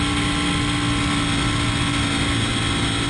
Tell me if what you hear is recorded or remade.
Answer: recorded